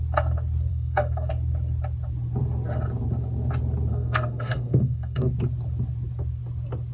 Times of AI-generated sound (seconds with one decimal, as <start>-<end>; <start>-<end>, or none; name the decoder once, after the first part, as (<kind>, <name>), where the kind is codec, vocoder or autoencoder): 0.7-1.3 (codec, SNAC); 3.9-5.3